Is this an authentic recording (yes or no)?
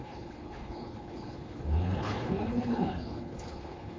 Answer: no